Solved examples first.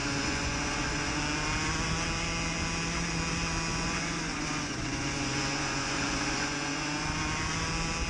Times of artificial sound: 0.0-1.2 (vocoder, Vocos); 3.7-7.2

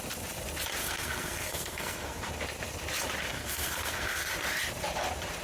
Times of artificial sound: 0.8-2.3 (codec, SNAC); 3.3-4.3